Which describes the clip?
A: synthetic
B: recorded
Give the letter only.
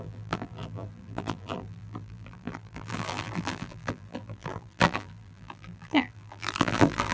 A